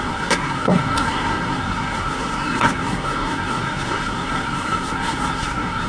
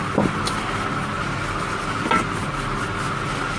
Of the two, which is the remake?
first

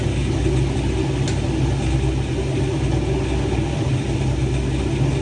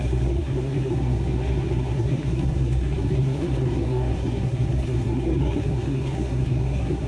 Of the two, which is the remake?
second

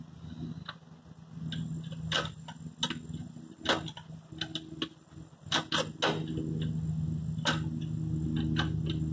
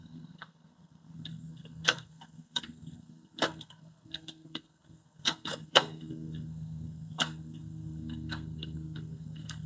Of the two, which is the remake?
second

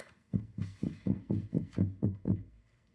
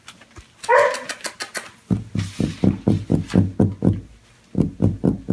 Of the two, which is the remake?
first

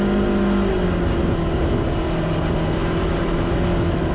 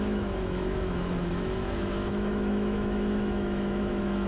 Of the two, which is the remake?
second